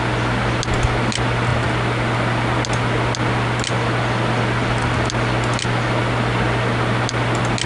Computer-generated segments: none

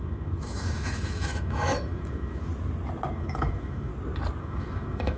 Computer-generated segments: 0.0-2.5 (autoencoder, DAC-VAE); 3.1-3.9; 4.4-5.2

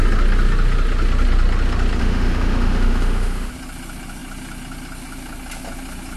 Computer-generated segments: 2.0-3.5 (autoencoder, DAC-VAE)

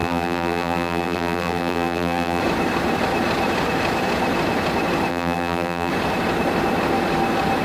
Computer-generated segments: 0.0-2.4 (vocoder, BigVGAN v2); 5.1-5.9

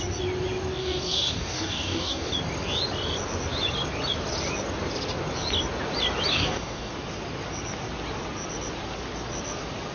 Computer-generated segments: 0.8-2.3 (codec, DAC); 6.3-6.9

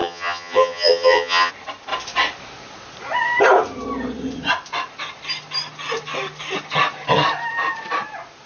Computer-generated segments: 0.0-1.5 (vocoder, HiFi-GAN)

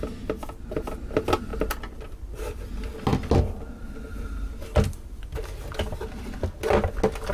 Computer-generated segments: 1.5-2.7 (vocoder, BigVGAN v2)

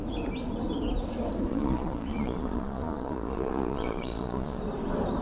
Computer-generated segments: 1.5-4.6 (vocoder, Vocos)